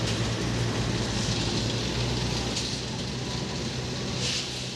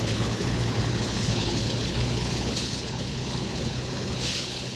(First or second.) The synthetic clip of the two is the second